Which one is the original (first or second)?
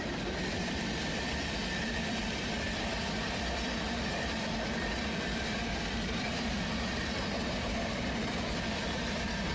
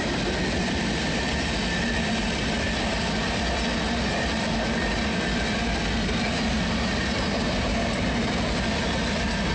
second